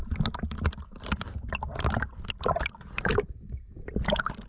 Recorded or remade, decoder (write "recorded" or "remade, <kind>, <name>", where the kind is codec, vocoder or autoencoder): recorded